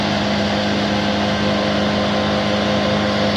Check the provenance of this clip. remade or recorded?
recorded